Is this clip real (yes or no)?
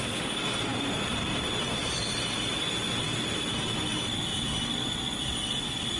yes